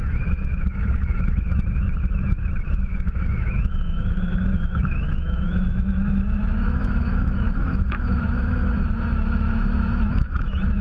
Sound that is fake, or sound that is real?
fake